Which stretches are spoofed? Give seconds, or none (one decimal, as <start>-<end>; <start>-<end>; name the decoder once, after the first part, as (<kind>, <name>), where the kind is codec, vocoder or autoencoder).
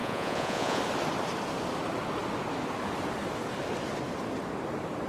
0.0-0.8 (vocoder, Vocos)